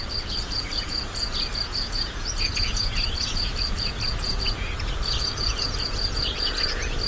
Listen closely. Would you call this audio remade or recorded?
remade